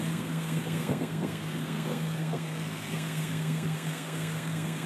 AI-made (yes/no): yes